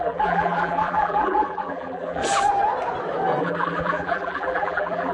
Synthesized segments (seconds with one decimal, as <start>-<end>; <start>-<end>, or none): 0.0-2.2; 3.4-5.1